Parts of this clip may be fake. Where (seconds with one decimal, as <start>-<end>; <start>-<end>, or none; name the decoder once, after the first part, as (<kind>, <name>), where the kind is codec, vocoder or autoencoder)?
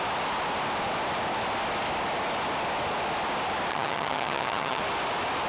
3.7-4.8 (vocoder, HiFi-GAN)